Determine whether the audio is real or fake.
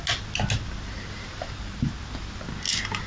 real